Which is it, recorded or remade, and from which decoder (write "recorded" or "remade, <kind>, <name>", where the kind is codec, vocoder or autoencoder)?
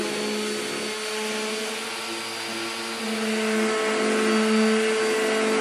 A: recorded